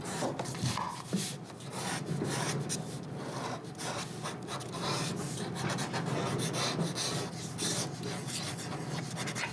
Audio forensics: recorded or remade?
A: recorded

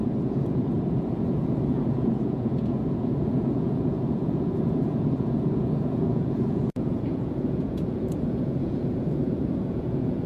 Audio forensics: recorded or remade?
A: remade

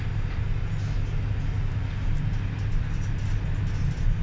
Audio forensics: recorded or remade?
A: recorded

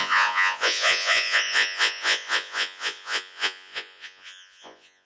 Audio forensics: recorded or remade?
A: remade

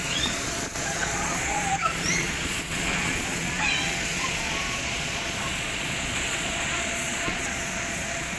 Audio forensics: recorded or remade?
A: remade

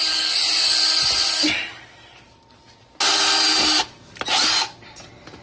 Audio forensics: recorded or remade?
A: recorded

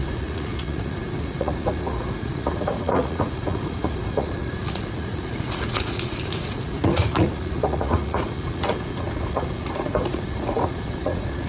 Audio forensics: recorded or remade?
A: remade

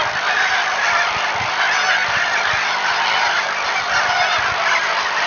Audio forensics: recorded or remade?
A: recorded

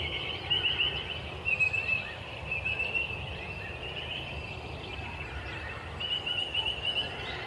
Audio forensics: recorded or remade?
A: recorded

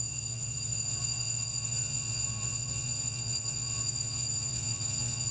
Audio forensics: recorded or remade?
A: remade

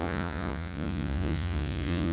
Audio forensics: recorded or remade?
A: remade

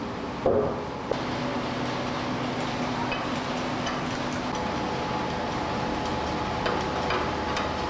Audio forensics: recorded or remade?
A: recorded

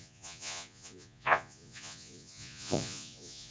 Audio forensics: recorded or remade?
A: remade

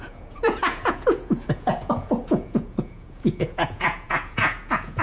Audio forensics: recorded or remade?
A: remade